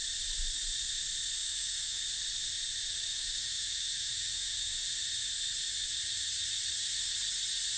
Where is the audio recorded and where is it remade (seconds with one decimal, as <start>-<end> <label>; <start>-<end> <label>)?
0.0-1.4 recorded; 1.4-2.0 remade; 2.0-3.1 recorded; 3.1-4.8 remade; 4.8-7.8 recorded

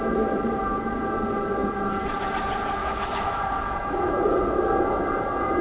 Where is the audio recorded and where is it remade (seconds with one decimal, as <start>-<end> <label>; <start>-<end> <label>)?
0.0-2.8 recorded; 2.8-3.4 remade; 3.4-5.6 recorded

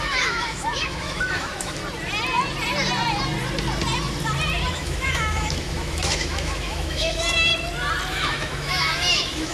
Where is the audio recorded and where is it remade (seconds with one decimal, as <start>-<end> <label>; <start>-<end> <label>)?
0.0-1.8 remade; 1.8-4.7 recorded; 4.7-7.5 remade; 7.5-8.1 recorded; 8.1-9.5 remade

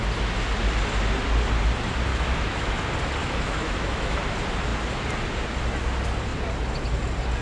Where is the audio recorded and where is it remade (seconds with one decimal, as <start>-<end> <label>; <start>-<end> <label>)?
0.0-2.1 recorded; 2.1-2.8 remade; 2.8-3.2 recorded; 3.2-4.2 remade; 4.2-7.4 recorded

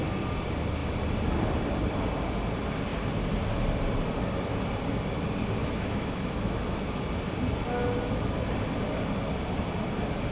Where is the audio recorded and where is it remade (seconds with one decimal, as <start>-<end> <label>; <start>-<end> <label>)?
0.0-5.6 recorded; 5.6-6.8 remade; 6.8-10.3 recorded

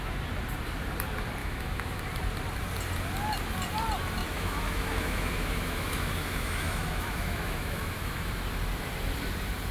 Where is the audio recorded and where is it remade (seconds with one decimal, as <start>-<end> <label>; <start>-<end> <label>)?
0.0-1.4 recorded; 1.4-2.0 remade; 2.0-4.2 recorded; 4.2-8.3 remade; 8.3-9.7 recorded

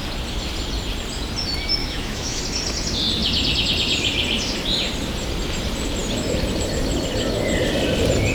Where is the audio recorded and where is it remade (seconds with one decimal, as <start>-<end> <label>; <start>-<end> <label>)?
0.0-1.8 recorded; 1.8-2.4 remade; 2.4-8.3 recorded

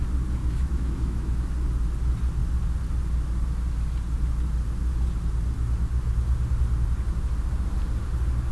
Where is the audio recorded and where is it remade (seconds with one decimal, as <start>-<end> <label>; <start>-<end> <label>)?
0.0-0.4 recorded; 0.4-1.4 remade; 1.4-8.5 recorded